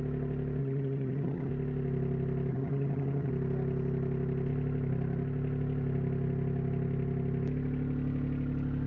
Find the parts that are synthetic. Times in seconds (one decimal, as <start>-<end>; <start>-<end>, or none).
0.6-1.5; 2.5-3.3